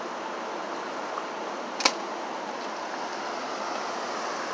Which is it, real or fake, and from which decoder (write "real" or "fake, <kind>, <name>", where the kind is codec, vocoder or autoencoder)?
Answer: real